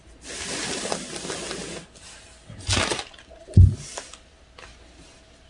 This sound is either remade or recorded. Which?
recorded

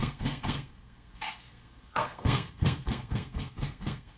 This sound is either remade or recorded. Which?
remade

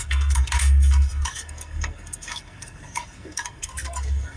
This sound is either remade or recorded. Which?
remade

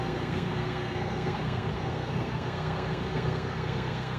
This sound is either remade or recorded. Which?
remade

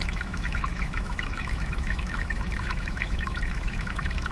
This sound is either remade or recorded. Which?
remade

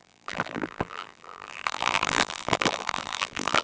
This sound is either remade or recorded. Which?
remade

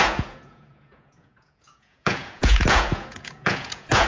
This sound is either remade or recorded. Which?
remade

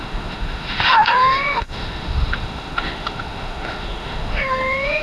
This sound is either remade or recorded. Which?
remade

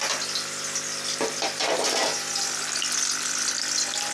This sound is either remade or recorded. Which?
recorded